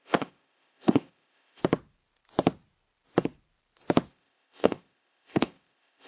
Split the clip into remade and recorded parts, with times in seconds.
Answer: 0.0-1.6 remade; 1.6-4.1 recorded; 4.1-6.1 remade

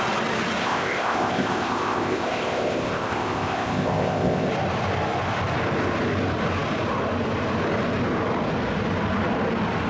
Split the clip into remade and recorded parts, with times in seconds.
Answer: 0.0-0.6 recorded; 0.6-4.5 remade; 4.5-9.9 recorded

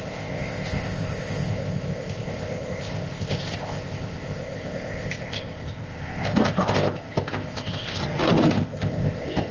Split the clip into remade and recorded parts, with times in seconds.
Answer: 0.0-8.0 remade; 8.0-8.5 recorded; 8.5-9.5 remade